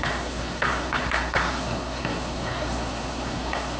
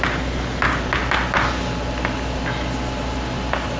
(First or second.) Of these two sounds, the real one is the second